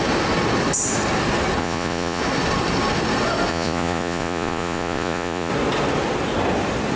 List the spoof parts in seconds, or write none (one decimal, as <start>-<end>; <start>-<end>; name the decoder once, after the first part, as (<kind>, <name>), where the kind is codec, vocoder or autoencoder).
1.6-2.2 (vocoder, Vocos); 3.5-5.5